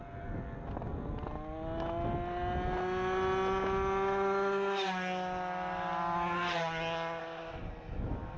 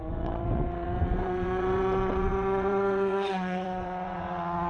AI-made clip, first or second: second